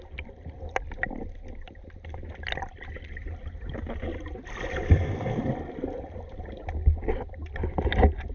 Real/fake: real